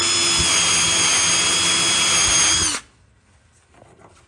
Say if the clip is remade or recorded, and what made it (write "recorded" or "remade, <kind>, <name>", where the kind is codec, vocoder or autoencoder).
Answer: recorded